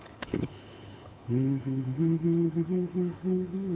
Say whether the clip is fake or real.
fake